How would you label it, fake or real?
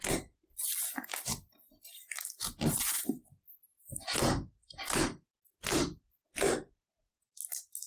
real